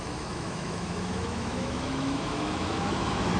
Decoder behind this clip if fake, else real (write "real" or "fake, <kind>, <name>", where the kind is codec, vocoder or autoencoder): fake, autoencoder, DAC-VAE